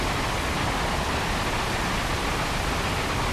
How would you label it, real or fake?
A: real